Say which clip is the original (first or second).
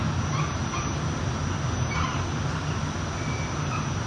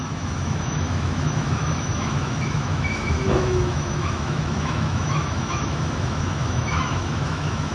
first